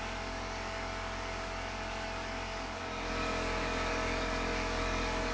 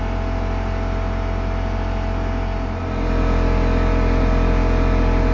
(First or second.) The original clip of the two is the second